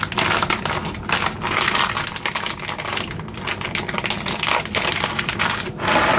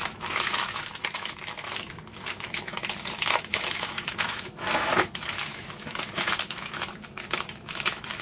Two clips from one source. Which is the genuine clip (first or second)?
first